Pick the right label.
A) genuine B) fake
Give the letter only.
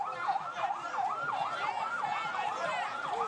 A